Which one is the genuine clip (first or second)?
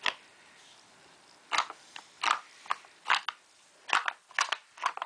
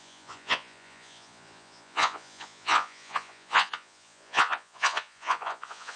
first